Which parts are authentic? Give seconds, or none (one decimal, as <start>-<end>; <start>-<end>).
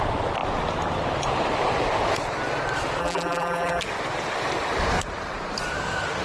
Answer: 0.0-3.0; 3.8-6.2